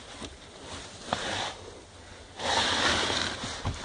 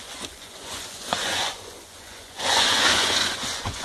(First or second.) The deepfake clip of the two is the second